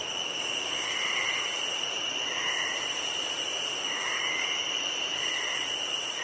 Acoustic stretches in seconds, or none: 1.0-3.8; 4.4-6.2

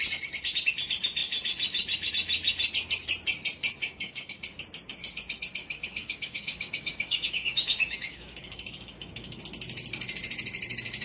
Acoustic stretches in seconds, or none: 0.0-3.8; 4.4-5.6; 9.4-11.0

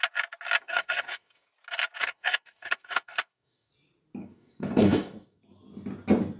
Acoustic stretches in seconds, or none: 0.0-0.6; 1.5-2.0; 3.7-4.2; 5.4-6.4

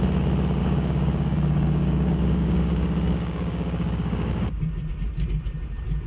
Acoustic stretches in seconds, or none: 0.0-0.6; 4.3-6.1

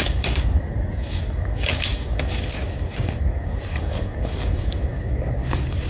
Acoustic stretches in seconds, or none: none